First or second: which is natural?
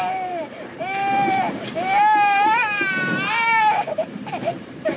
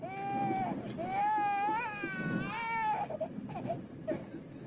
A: second